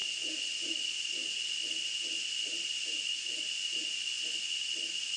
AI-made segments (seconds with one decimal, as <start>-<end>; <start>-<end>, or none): none

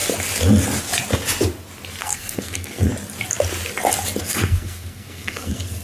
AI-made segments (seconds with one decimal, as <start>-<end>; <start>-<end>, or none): 2.0-2.9; 4.2-5.8

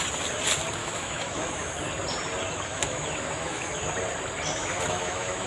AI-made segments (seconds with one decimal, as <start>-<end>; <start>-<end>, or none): 0.8-1.7; 2.7-3.7; 4.6-5.5

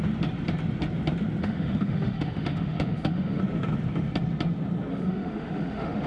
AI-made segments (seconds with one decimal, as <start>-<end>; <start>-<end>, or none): 1.4-3.4; 4.9-6.1

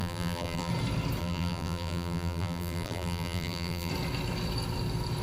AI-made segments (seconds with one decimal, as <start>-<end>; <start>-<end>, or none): 0.0-0.7; 1.2-3.9

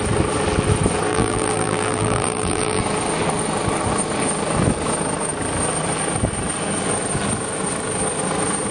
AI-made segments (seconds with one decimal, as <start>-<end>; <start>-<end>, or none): 1.1-2.8